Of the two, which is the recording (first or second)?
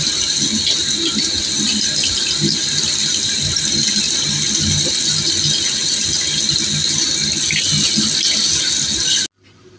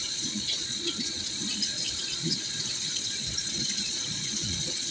first